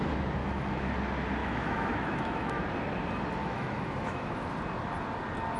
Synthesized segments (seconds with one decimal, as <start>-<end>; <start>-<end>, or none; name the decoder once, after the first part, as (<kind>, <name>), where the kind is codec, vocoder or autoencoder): 0.4-0.9 (autoencoder, DAC-VAE); 1.4-2.6; 3.4-4.5